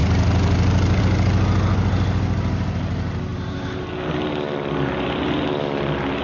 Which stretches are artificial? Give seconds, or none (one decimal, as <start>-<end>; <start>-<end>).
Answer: 3.3-3.9